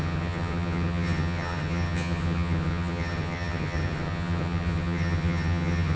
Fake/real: fake